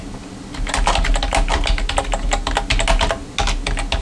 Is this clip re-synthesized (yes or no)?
no